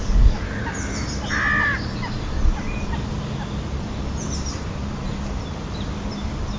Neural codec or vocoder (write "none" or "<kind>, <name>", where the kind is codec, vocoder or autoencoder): none